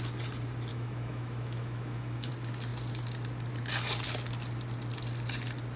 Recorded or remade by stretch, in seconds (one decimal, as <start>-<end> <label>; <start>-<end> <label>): 0.0-0.7 recorded; 0.7-2.3 remade; 2.3-5.8 recorded